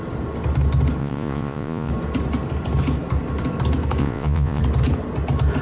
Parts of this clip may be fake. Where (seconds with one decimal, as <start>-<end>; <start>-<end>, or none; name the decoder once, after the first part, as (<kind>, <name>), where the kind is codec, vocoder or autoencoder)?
1.0-1.9 (vocoder, Vocos); 4.0-4.6